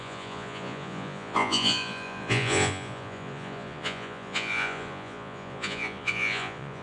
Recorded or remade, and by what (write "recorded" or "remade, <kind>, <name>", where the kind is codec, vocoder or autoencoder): remade, vocoder, Vocos